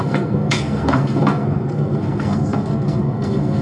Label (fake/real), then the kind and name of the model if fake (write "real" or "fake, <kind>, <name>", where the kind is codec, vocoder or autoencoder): fake, codec, SNAC